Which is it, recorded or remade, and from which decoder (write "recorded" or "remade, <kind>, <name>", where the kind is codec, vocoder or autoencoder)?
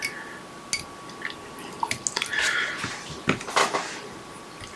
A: recorded